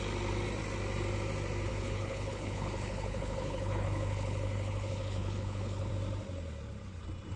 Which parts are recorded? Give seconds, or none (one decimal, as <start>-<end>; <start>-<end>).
0.0-1.7; 5.9-7.4